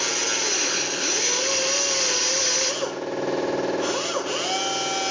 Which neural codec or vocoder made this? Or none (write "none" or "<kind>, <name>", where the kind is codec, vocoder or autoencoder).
none